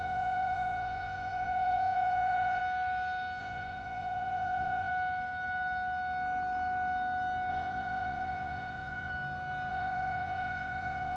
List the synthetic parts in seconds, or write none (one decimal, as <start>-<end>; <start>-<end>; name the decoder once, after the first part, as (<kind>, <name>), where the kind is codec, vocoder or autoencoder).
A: 0.0-2.6 (vocoder, Vocos); 3.4-4.9; 7.5-9.1; 9.7-11.2